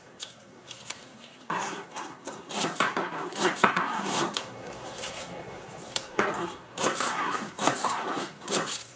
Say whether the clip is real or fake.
fake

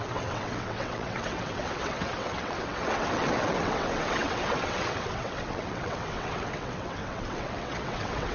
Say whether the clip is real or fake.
fake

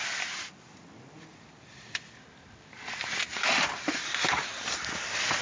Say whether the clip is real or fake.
real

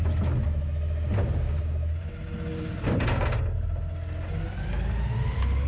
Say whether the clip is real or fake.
real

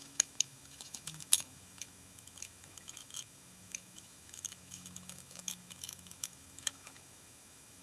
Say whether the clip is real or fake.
fake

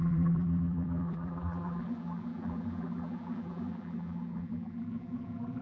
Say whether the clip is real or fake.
fake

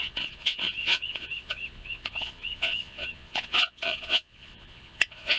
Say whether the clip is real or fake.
fake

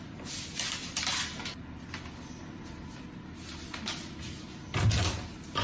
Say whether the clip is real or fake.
real